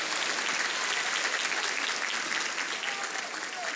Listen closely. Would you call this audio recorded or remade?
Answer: recorded